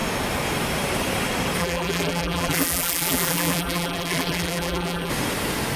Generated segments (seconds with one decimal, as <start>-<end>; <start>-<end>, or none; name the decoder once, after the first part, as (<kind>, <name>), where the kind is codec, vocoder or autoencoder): 1.6-5.1 (vocoder, BigVGAN v2)